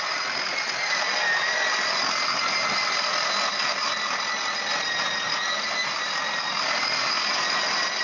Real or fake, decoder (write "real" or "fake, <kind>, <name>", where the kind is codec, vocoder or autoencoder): real